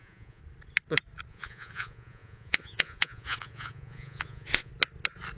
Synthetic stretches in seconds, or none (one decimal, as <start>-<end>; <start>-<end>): 0.0-0.4; 1.3-4.7

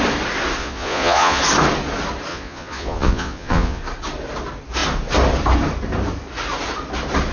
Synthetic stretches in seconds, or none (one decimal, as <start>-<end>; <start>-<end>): 0.6-1.4; 2.3-3.8

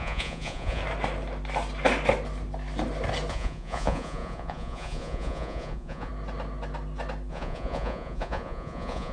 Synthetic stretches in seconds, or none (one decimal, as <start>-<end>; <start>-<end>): 0.0-0.8; 3.3-6.1; 7.3-9.1

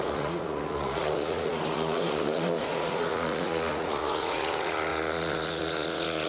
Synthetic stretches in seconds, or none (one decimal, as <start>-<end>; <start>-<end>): 0.0-6.3